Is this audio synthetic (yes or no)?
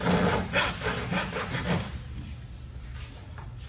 no